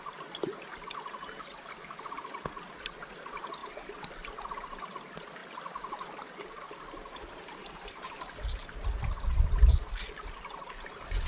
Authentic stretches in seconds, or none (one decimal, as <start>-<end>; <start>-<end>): 0.0-11.3